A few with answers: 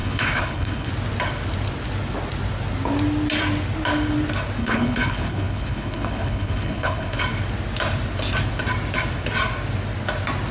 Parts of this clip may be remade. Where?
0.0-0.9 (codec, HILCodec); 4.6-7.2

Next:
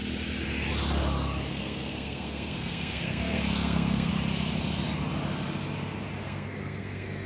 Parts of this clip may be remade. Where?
1.5-4.1 (codec, SNAC); 6.2-7.3

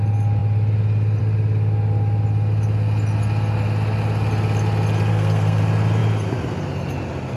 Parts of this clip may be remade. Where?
5.1-5.6 (codec, SNAC)

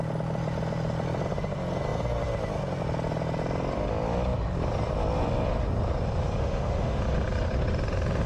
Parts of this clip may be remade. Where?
6.4-7.0 (autoencoder, DAC-VAE)

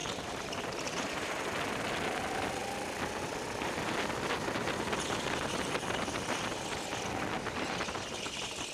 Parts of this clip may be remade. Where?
0.0-1.3 (vocoder, BigVGAN v2)